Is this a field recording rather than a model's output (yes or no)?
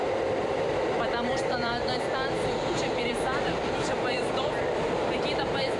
no